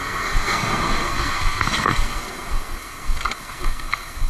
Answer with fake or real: fake